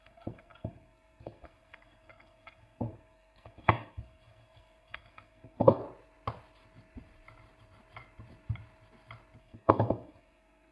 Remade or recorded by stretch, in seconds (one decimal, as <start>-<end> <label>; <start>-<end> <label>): 0.0-5.8 remade; 5.8-9.4 recorded; 9.4-10.7 remade